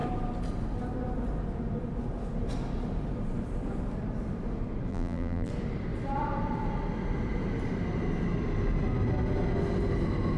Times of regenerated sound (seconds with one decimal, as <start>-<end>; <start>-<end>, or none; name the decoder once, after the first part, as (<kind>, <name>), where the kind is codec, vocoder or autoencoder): 4.9-5.5 (vocoder, BigVGAN v2)